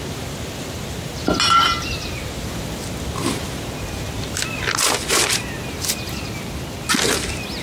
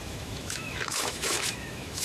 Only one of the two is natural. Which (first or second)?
first